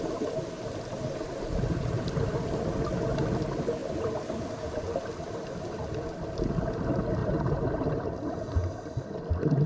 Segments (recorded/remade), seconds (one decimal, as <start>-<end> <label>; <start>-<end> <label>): 0.0-7.2 recorded; 7.2-8.2 remade; 8.2-9.7 recorded

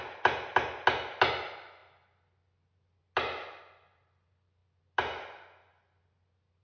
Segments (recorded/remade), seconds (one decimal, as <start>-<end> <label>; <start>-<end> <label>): 0.0-6.6 recorded

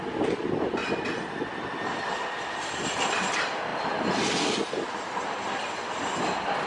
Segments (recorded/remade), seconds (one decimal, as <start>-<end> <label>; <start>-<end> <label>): 0.0-6.7 recorded

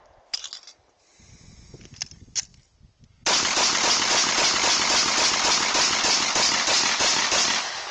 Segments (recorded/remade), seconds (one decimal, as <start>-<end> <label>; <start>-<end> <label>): 0.0-7.9 recorded

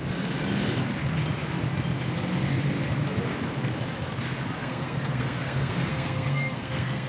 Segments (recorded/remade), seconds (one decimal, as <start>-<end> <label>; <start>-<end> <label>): 0.0-4.6 recorded; 4.6-7.1 remade

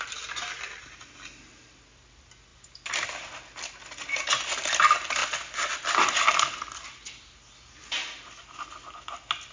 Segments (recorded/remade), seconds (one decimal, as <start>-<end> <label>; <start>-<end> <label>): 0.0-9.5 recorded